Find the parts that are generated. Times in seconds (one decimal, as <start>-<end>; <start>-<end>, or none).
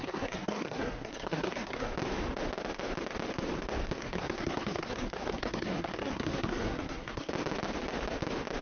0.0-1.9; 4.0-7.3